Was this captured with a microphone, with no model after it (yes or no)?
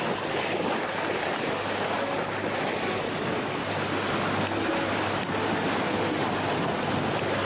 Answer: yes